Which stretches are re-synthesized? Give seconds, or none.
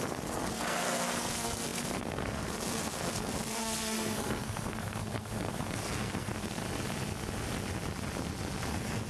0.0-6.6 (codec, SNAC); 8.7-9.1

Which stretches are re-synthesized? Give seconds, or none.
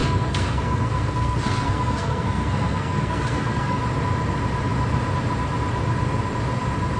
0.0-3.8 (codec, SNAC)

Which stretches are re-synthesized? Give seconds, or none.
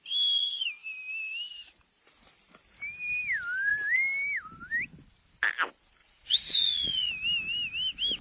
6.0-7.1 (vocoder, Vocos)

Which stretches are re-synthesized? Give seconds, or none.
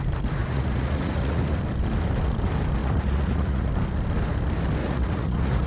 0.4-1.6 (vocoder, Vocos); 2.8-3.7; 4.8-5.7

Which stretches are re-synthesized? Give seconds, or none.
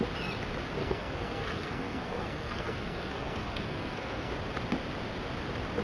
0.8-4.3 (codec, SNAC)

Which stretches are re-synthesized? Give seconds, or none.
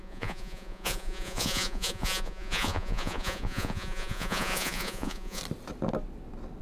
0.0-5.4 (vocoder, Vocos)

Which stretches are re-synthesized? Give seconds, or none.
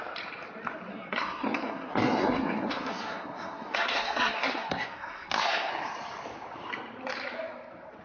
0.9-5.7 (codec, SNAC)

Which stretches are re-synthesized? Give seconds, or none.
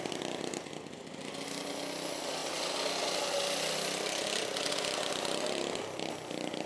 none